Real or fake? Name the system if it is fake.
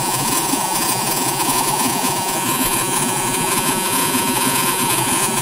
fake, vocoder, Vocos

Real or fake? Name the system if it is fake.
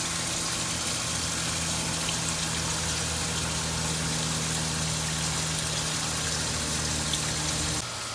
real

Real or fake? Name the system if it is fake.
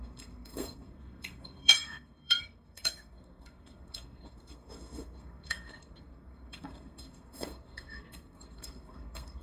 fake, codec, SNAC